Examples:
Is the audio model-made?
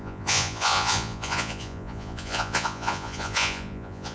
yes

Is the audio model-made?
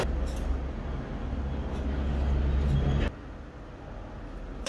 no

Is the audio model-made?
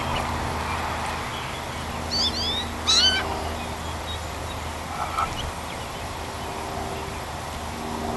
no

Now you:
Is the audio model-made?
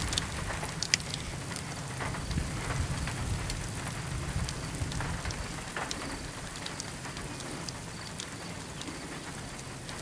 no